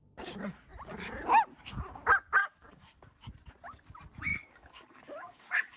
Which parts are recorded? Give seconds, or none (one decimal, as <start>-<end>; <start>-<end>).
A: 0.0-2.4; 3.2-4.3